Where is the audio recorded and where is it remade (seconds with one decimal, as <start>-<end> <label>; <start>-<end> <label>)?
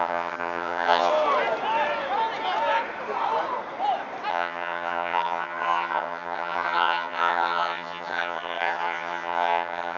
0.0-1.1 remade; 1.1-4.3 recorded; 4.3-10.0 remade